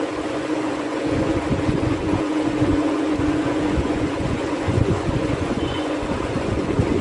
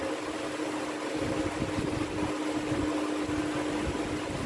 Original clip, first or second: second